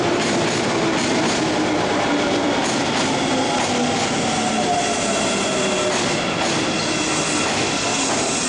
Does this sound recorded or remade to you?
recorded